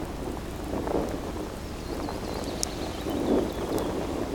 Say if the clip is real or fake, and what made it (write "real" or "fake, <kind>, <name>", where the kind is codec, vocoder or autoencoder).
real